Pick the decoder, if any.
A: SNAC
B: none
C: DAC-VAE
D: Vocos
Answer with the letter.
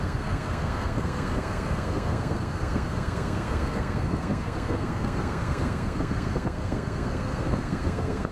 A